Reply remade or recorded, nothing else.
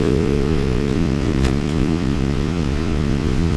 remade